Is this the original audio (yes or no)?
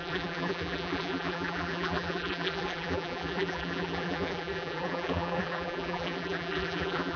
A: no